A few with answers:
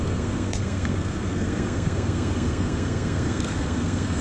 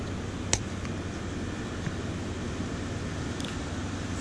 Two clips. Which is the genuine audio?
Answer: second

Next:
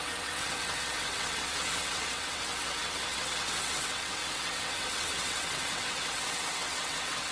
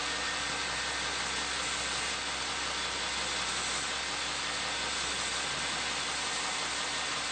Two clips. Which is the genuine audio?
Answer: second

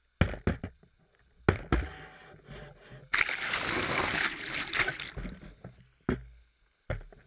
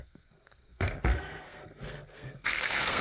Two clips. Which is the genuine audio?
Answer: first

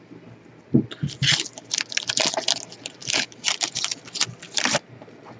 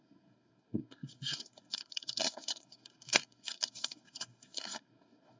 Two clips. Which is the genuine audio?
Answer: first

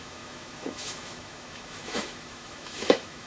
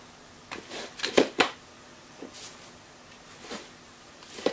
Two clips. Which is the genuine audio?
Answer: second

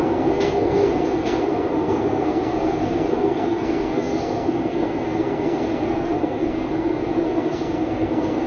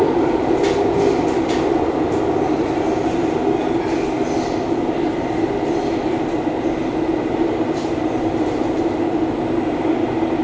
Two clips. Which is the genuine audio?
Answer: second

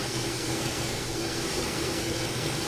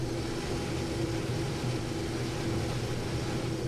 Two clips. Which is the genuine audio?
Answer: second